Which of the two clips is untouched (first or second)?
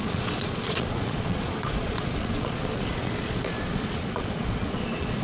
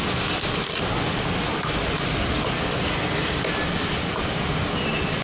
second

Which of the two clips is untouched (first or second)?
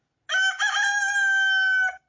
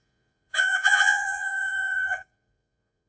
first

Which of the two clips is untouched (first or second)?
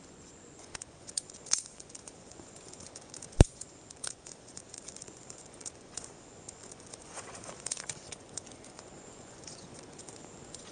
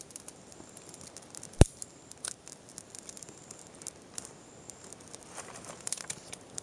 second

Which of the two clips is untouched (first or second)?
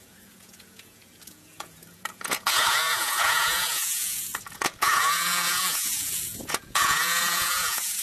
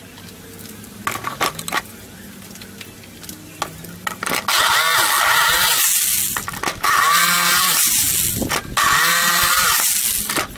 second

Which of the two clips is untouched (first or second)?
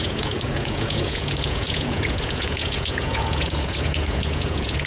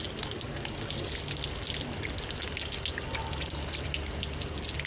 second